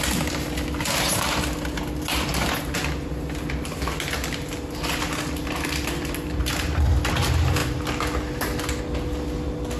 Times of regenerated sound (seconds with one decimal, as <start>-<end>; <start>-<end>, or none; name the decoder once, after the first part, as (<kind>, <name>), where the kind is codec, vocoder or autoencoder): none